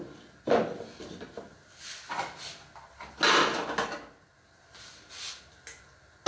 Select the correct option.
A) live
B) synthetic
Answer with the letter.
A